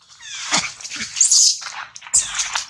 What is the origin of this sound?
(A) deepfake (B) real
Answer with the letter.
B